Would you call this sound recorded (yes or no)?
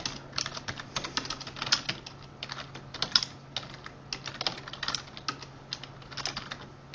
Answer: yes